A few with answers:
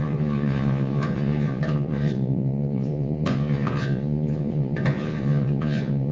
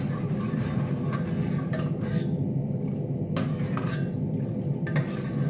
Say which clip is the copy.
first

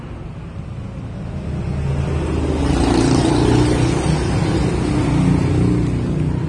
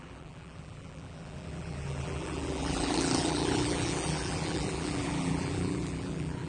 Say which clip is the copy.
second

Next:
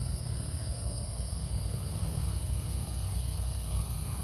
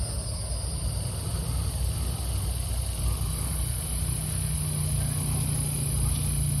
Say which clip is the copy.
first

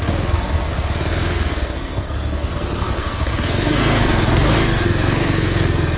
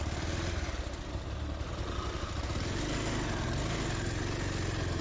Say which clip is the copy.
first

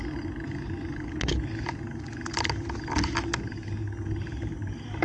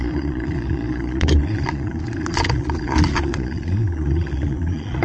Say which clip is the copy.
second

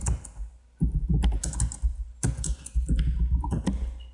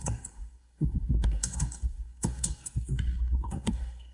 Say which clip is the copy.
second